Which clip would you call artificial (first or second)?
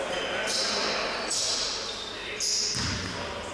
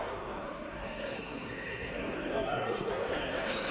second